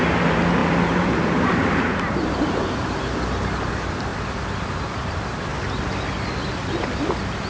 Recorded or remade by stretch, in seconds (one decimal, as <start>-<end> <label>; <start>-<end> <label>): 0.0-4.1 remade; 4.1-4.7 recorded; 4.7-5.5 remade; 5.5-6.5 recorded; 6.5-7.5 remade